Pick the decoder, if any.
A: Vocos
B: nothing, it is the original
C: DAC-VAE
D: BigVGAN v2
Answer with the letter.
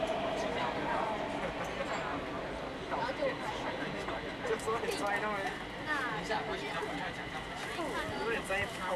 B